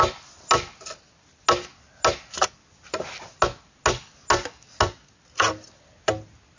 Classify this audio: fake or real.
real